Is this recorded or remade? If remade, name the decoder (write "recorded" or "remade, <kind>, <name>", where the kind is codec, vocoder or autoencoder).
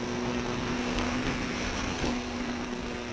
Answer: remade, codec, SNAC